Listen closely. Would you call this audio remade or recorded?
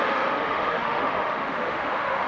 remade